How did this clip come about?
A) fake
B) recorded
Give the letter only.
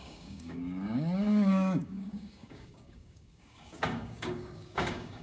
A